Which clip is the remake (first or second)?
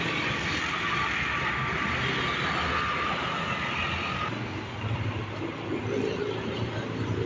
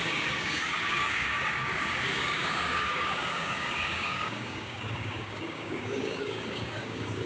second